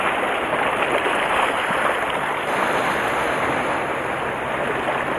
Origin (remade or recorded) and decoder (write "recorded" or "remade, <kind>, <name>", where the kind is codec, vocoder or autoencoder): recorded